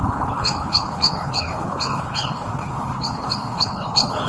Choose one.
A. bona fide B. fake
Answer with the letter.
B